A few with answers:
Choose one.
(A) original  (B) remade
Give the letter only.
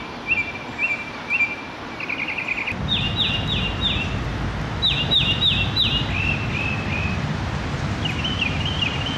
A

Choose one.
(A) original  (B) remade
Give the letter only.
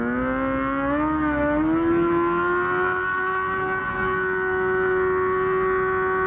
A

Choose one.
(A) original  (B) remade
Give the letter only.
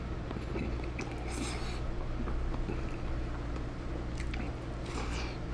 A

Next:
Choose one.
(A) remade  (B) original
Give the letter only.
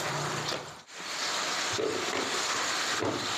A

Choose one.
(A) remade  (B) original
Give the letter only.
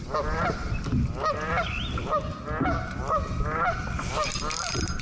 B